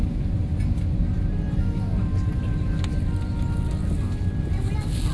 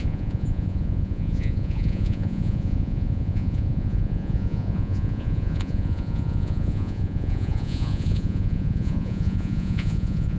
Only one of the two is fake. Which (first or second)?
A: second